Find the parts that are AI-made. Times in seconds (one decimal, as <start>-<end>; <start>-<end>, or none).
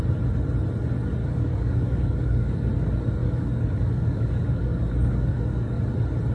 1.2-2.7; 3.2-5.8